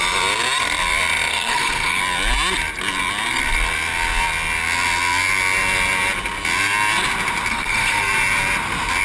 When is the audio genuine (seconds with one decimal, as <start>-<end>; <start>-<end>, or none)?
0.0-1.3; 2.0-7.5; 8.1-9.0